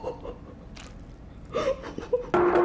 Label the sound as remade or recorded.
recorded